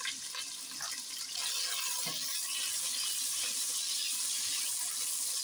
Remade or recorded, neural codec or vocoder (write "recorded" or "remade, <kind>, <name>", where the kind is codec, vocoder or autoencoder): recorded